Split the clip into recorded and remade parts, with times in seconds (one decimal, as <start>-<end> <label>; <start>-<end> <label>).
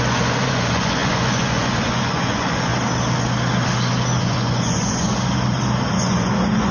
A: 0.0-2.7 remade; 2.7-4.2 recorded; 4.2-5.1 remade; 5.1-5.9 recorded; 5.9-6.7 remade